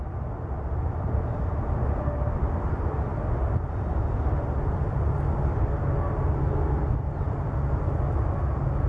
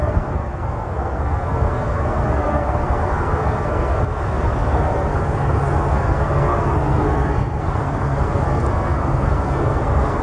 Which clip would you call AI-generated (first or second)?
second